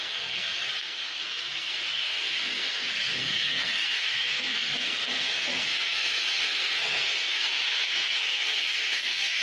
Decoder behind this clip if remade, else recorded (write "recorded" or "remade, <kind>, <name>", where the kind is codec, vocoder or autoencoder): remade, codec, SNAC